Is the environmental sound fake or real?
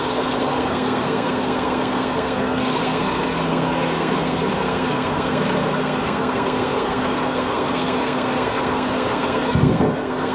fake